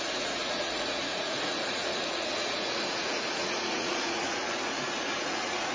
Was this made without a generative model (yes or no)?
no